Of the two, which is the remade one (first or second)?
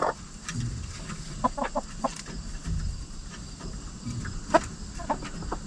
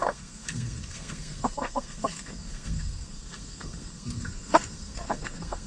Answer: second